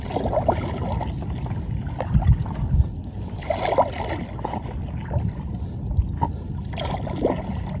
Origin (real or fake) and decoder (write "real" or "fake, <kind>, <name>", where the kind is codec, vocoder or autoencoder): real